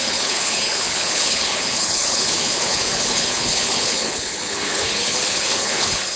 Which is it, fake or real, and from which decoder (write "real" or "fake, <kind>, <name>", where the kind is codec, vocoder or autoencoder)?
fake, codec, HILCodec